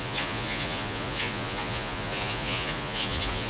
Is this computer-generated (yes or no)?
yes